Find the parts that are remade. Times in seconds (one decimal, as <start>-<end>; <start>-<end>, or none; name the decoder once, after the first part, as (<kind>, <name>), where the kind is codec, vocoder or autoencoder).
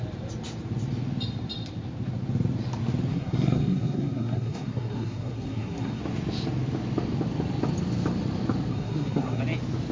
3.1-6.0 (codec, SNAC); 8.7-9.4